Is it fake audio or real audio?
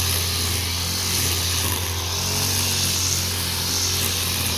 real